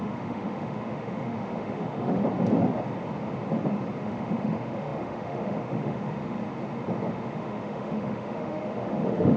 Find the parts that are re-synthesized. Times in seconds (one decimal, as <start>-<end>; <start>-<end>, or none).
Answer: 0.0-2.2; 4.0-6.4; 7.1-9.4